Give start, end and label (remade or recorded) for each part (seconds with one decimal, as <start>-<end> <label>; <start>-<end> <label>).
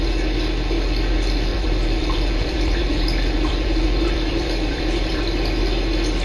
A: 0.0-1.5 recorded; 1.5-5.2 remade; 5.2-6.2 recorded